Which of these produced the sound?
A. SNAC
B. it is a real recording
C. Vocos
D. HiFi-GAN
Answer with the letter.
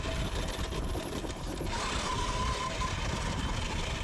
B